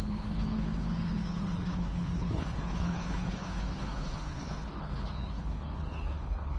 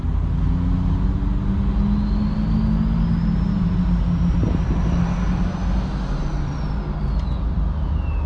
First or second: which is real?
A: second